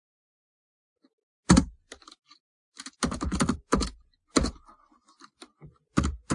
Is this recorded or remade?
recorded